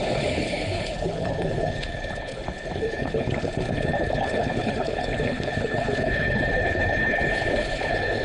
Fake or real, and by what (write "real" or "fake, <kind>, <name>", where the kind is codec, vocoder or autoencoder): fake, codec, HILCodec